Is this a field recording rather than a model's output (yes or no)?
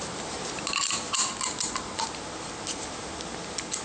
yes